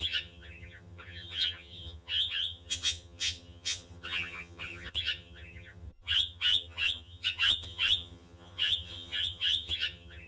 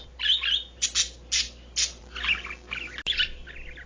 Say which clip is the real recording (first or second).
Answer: second